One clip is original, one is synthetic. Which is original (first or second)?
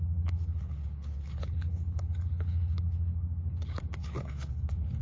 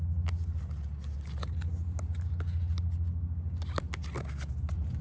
second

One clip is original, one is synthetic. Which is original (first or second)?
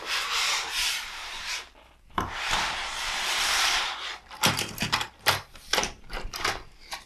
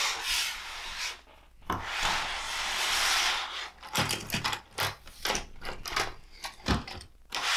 second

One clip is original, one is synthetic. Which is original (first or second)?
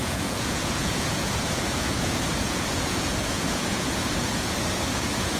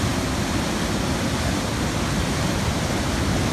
second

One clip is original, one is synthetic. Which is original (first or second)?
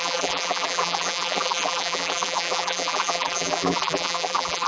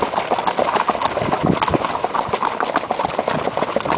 second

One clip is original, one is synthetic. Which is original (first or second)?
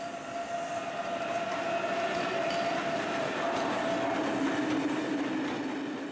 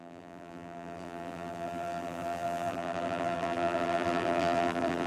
first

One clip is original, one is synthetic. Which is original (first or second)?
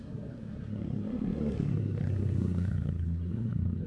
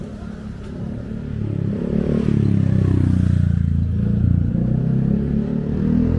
second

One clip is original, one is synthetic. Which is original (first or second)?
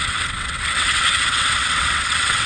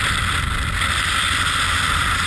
second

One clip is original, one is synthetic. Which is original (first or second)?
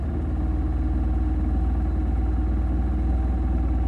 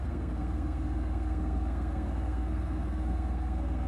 first